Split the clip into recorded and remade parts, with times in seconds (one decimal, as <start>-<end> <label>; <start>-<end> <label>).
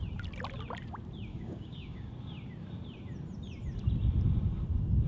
0.0-1.3 recorded; 1.3-2.1 remade; 2.1-5.1 recorded